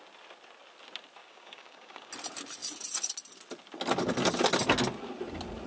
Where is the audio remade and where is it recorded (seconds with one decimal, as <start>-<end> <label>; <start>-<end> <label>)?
0.0-1.2 recorded; 1.2-2.1 remade; 2.1-5.7 recorded

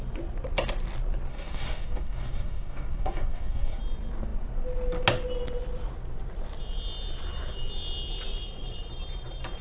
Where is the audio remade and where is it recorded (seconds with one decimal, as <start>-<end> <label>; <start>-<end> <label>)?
0.0-1.3 recorded; 1.3-3.8 remade; 3.8-9.6 recorded

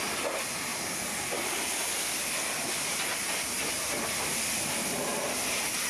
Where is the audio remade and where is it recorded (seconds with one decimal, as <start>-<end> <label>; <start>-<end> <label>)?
0.0-5.9 recorded

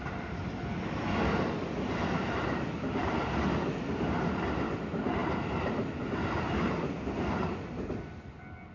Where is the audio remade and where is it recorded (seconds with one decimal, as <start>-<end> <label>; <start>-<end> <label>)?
0.0-8.7 recorded

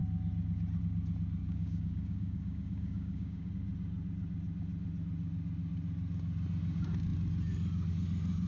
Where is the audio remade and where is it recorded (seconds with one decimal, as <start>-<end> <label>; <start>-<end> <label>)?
0.0-1.4 recorded; 1.4-3.5 remade; 3.5-8.5 recorded

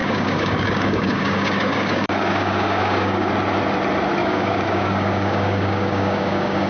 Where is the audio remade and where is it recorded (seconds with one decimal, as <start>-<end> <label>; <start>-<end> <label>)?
0.0-3.3 remade; 3.3-4.2 recorded; 4.2-6.7 remade

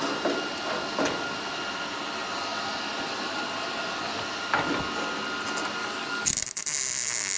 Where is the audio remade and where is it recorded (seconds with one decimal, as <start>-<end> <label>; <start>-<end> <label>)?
0.0-5.8 recorded; 5.8-6.3 remade; 6.3-7.4 recorded

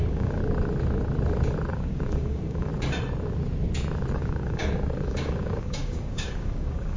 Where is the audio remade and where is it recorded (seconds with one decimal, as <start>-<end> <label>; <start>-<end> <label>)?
0.0-0.4 remade; 0.4-1.7 recorded; 1.7-2.7 remade; 2.7-4.1 recorded; 4.1-7.0 remade